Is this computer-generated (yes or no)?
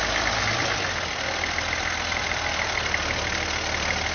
no